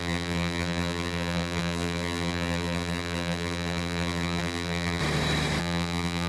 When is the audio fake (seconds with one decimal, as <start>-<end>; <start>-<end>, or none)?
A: 0.0-5.0; 5.6-6.3